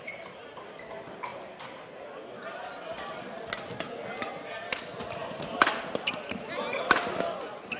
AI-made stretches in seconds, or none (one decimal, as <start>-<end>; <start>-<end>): none

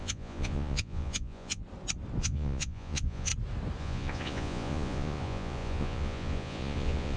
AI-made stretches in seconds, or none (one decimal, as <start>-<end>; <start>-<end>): 0.0-1.6; 2.2-3.3; 3.8-7.2

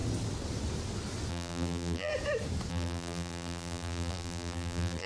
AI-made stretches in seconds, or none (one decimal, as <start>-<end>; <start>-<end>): 1.3-2.1; 2.7-5.1

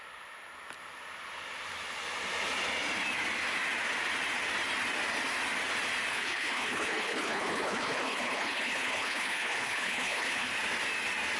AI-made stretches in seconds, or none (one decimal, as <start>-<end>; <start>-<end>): 6.1-10.5